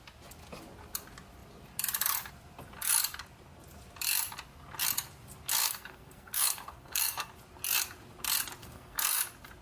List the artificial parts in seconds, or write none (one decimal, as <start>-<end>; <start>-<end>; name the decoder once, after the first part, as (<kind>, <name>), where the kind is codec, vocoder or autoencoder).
5.6-7.3 (codec, SNAC); 8.6-9.2